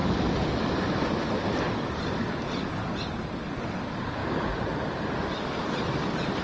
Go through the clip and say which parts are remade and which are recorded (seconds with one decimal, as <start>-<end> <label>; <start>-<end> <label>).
0.0-6.4 recorded